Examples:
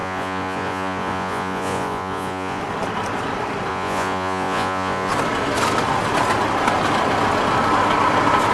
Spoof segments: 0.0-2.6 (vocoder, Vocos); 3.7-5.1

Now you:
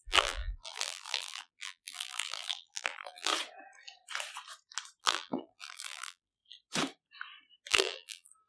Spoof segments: 0.0-3.3 (vocoder, BigVGAN v2); 5.0-6.4; 7.7-8.5